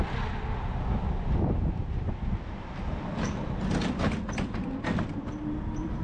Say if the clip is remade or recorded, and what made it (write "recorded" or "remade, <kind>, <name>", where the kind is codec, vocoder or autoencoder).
recorded